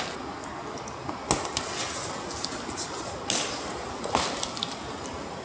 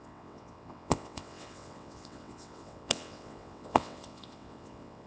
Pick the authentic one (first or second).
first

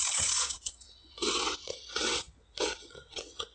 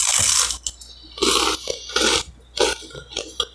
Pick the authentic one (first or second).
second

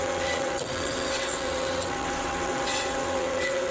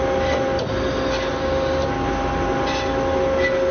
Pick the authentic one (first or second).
second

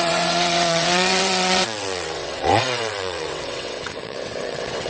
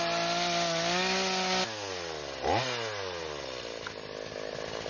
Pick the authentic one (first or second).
second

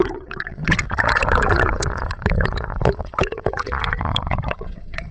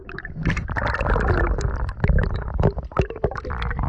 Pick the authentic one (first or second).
second